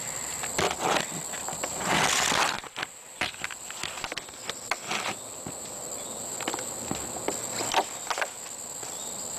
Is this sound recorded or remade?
recorded